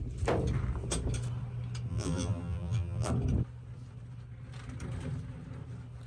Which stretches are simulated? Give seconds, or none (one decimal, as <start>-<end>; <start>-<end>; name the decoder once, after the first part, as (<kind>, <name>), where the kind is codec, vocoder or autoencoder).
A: 1.9-3.1 (vocoder, BigVGAN v2)